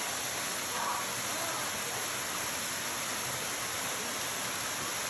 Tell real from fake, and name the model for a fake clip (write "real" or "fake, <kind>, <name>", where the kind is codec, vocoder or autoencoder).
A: real